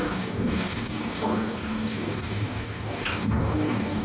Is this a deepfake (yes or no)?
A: yes